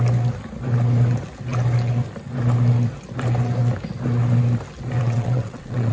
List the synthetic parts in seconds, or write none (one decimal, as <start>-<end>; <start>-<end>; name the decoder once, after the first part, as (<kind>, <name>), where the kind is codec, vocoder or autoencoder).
5.0-5.9 (vocoder, WaveNeXt)

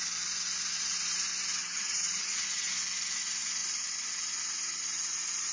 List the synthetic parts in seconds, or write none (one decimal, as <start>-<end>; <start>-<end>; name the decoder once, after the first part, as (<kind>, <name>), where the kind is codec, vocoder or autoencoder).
1.6-2.7 (vocoder, HiFi-GAN)

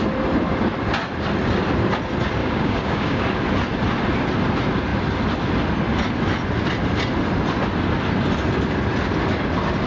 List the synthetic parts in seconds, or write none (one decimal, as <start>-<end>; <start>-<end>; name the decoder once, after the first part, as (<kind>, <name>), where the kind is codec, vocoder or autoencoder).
2.4-3.2 (codec, DAC)

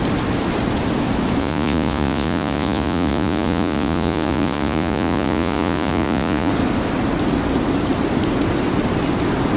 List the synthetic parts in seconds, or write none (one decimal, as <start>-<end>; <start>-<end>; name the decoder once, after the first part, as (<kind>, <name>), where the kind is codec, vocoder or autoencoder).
1.4-6.5 (vocoder, Vocos)

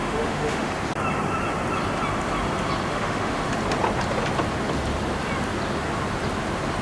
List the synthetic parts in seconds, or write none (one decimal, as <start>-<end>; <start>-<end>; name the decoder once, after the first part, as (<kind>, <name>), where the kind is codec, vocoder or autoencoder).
0.0-0.7 (autoencoder, DAC-VAE); 2.9-3.5